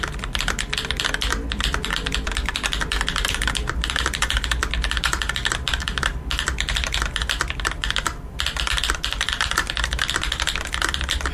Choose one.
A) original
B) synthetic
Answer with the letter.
A